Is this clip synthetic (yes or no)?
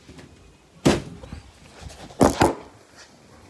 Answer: no